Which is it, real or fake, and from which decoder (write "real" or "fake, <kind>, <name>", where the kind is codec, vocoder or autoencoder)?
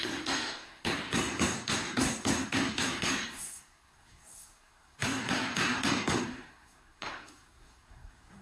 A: fake, codec, SNAC